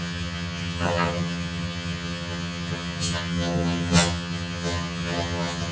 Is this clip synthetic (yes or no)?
yes